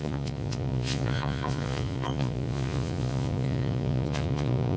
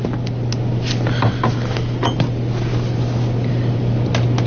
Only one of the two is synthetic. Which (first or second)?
first